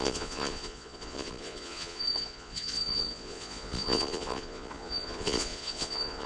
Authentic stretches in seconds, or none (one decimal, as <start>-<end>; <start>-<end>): none